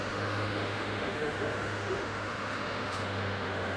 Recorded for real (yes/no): no